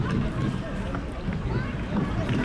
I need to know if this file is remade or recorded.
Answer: recorded